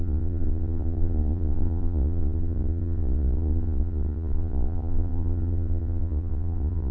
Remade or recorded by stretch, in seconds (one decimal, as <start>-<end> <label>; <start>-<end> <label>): 0.0-6.9 remade

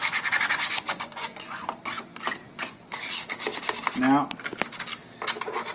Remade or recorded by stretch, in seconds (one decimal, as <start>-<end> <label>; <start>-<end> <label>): 0.0-1.8 remade; 1.8-2.4 recorded; 2.4-3.0 remade; 3.0-5.7 recorded

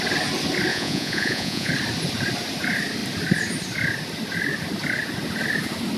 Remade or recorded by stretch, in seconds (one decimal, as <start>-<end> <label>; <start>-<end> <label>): 0.0-0.7 recorded; 0.7-1.7 remade; 1.7-6.0 recorded

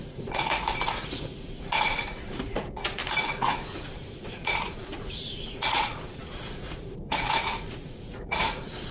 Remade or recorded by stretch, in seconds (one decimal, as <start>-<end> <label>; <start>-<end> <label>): 0.0-8.9 remade

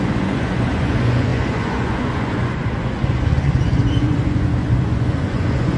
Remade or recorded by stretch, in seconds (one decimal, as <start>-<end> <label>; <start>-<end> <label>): 0.0-5.8 remade

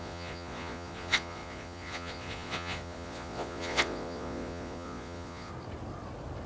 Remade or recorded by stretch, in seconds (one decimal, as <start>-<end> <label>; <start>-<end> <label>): 0.0-5.5 remade; 5.5-6.5 recorded

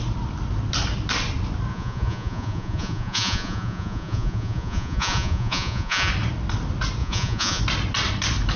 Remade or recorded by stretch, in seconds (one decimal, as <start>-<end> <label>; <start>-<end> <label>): 0.0-1.7 recorded; 1.7-6.1 remade; 6.1-7.0 recorded; 7.0-7.6 remade; 7.6-8.6 recorded

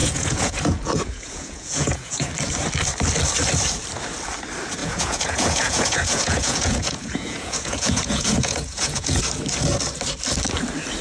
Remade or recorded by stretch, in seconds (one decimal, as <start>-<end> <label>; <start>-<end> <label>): 0.0-2.3 remade; 2.3-4.8 recorded; 4.8-9.2 remade; 9.2-11.0 recorded